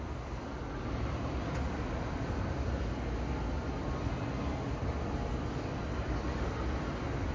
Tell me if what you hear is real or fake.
real